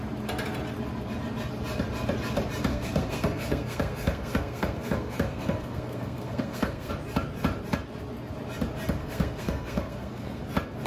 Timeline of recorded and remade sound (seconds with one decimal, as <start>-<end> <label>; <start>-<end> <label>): 0.0-2.7 recorded; 2.7-6.9 remade; 6.9-9.0 recorded; 9.0-10.4 remade; 10.4-10.9 recorded